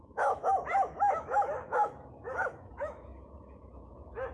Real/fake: fake